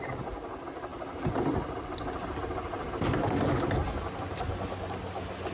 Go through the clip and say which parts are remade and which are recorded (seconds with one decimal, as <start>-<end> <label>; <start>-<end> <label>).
0.0-5.5 recorded